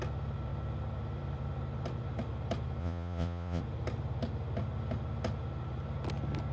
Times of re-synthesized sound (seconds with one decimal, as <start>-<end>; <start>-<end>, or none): 2.8-3.6